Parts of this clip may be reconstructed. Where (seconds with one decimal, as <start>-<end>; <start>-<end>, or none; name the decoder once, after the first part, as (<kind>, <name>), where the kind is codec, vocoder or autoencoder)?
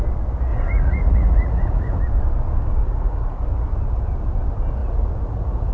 0.5-2.0 (vocoder, Vocos); 2.8-3.4; 4.8-5.7